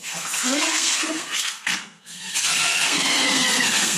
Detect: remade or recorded remade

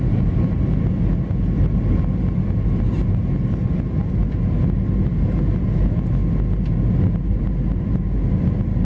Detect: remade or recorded recorded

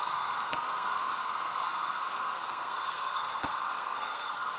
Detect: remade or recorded remade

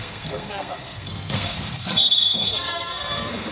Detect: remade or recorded remade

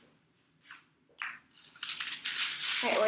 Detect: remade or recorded recorded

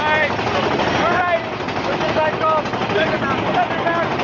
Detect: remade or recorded recorded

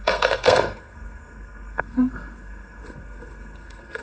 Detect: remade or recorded remade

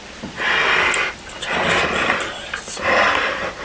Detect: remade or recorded recorded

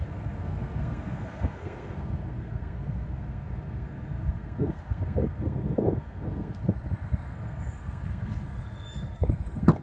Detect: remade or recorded remade